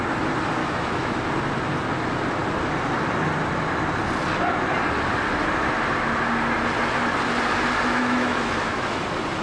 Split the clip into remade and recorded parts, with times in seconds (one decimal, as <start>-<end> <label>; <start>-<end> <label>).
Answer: 0.0-0.6 recorded; 0.6-1.2 remade; 1.2-7.9 recorded; 7.9-9.0 remade; 9.0-9.4 recorded